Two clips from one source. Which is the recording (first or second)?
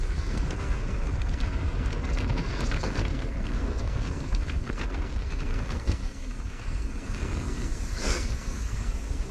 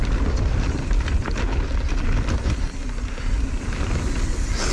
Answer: second